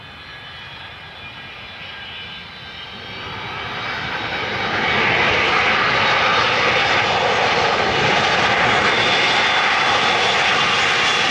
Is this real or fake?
real